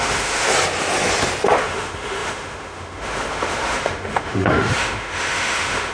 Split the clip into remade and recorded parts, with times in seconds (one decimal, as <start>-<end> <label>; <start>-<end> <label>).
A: 0.0-0.5 remade; 0.5-1.6 recorded; 1.6-5.9 remade